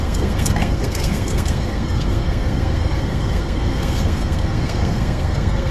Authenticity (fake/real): fake